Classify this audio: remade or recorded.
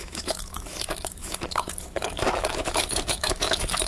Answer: remade